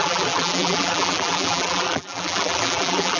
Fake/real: fake